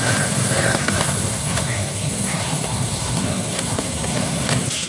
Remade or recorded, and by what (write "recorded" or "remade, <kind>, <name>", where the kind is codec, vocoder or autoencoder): remade, codec, SNAC